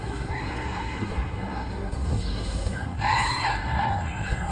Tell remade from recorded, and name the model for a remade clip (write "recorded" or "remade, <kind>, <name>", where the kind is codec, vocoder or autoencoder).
remade, codec, SNAC